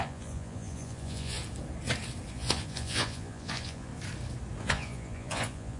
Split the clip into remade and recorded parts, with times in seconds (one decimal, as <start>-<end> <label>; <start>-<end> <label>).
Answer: 0.0-1.4 remade; 1.4-2.3 recorded; 2.3-3.9 remade; 3.9-4.6 recorded; 4.6-5.8 remade